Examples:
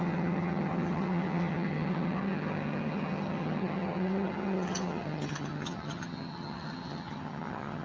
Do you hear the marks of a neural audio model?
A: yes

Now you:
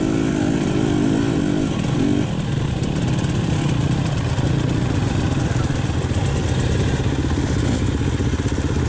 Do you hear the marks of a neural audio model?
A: no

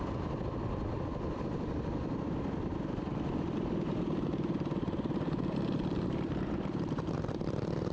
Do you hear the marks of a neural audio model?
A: no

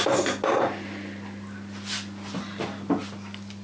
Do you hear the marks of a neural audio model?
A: no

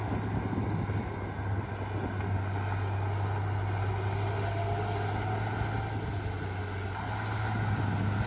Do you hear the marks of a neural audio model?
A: no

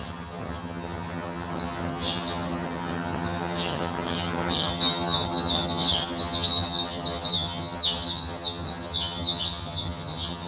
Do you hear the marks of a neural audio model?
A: yes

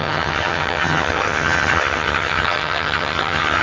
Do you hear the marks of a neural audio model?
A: yes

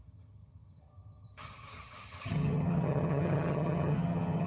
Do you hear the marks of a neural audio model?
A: yes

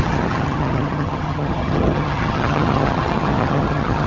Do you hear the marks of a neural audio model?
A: yes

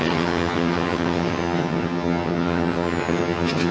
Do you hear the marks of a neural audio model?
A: yes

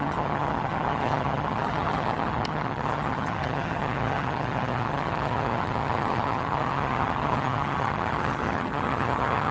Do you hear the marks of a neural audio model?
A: yes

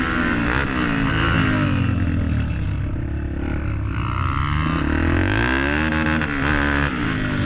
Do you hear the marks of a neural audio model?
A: no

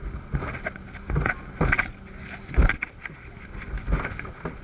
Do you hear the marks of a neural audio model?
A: no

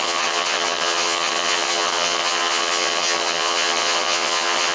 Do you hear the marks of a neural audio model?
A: yes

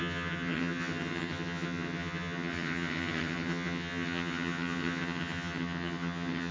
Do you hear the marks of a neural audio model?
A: yes